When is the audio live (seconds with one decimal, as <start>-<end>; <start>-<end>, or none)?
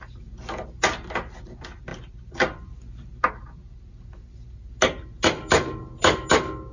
0.0-1.9; 2.7-6.7